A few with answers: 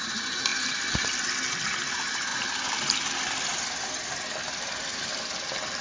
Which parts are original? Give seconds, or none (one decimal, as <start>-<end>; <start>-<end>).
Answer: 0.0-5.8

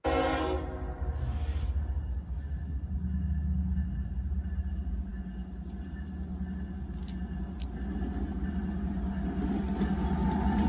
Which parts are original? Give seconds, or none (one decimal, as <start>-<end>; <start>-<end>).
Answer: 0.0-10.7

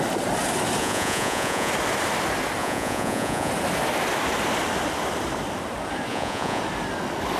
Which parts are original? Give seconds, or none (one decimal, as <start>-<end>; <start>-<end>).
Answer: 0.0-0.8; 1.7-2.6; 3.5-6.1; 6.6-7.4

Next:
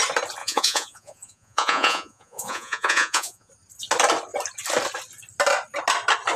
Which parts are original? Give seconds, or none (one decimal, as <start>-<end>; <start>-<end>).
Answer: 0.0-0.4; 3.5-6.4

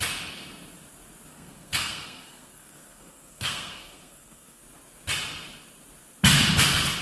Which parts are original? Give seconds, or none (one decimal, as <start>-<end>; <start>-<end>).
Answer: 0.0-1.3; 4.6-7.0

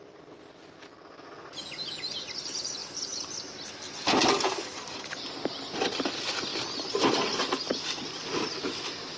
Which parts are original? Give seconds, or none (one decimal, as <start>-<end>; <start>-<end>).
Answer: 0.0-2.8; 3.7-9.2